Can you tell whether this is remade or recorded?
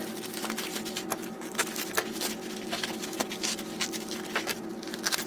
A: recorded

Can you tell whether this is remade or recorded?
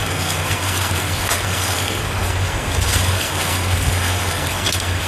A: remade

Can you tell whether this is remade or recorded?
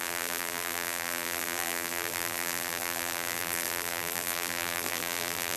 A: remade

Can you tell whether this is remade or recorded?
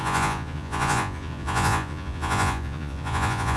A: remade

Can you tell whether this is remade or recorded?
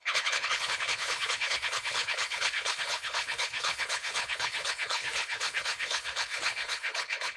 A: remade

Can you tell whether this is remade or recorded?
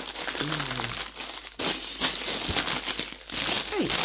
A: recorded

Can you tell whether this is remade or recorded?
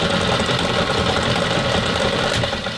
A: remade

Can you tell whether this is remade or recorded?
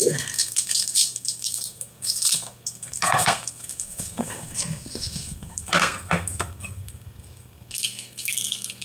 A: remade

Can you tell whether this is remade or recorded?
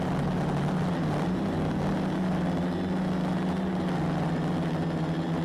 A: recorded